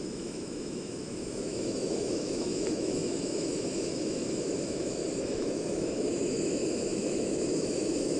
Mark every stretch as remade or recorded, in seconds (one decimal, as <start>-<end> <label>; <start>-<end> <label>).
0.0-8.2 remade